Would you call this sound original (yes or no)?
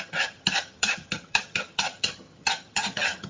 no